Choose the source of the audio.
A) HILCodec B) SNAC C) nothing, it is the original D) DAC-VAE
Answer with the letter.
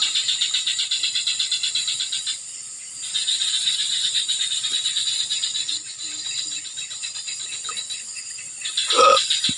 C